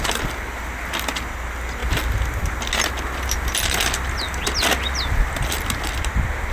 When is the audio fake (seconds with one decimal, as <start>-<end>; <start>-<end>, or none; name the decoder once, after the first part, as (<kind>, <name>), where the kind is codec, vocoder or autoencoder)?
none